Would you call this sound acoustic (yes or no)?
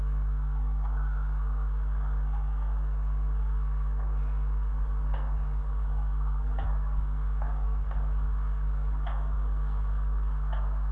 no